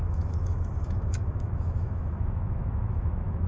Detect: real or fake fake